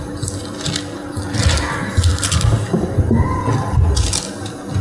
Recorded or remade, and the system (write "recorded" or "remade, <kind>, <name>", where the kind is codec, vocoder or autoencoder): recorded